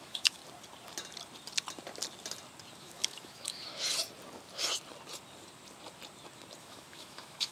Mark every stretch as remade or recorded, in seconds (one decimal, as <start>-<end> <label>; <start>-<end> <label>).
0.0-0.4 remade; 0.4-2.8 recorded; 2.8-3.7 remade; 3.7-6.6 recorded; 6.6-7.5 remade